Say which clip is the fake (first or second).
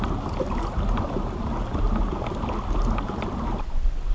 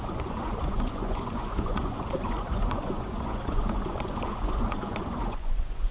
second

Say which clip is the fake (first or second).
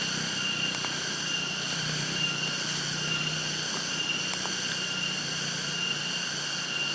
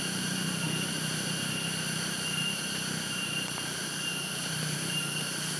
second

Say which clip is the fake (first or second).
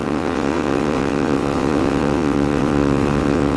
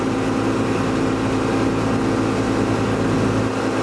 first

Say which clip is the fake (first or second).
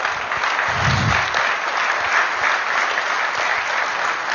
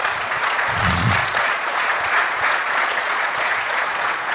second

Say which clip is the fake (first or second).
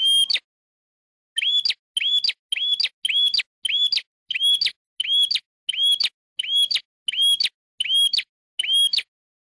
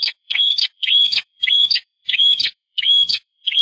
second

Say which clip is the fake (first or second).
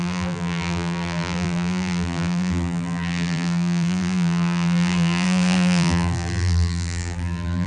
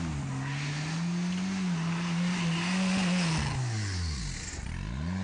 first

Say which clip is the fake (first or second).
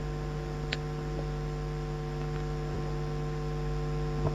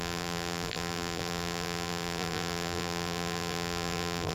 second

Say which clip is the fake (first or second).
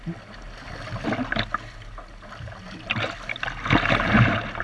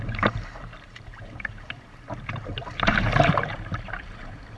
second